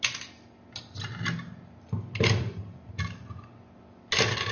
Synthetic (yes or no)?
no